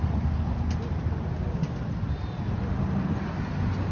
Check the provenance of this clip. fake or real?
real